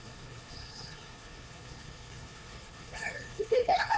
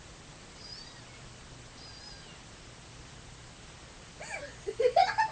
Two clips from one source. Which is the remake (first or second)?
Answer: first